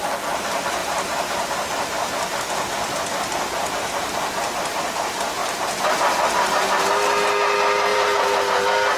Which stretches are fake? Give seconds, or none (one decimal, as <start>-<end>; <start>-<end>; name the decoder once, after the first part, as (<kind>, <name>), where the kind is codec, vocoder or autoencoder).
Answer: 0.8-2.4 (vocoder, BigVGAN v2); 5.4-6.2; 7.9-8.4